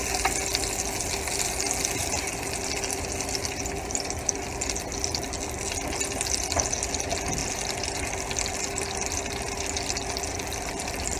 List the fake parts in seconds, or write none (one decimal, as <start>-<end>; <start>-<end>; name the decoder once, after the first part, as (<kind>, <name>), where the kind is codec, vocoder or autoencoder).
2.0-3.1 (vocoder, BigVGAN v2); 7.4-8.3